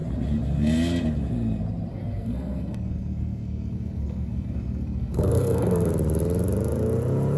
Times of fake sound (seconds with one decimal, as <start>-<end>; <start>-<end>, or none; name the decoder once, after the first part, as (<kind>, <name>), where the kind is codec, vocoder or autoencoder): 1.9-5.9 (codec, SNAC)